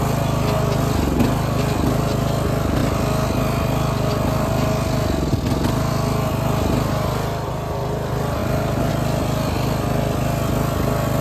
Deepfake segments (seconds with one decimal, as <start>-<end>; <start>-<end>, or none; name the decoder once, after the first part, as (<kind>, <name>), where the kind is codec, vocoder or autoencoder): 8.4-8.9 (vocoder, BigVGAN v2)